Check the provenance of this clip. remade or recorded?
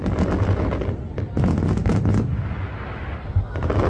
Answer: recorded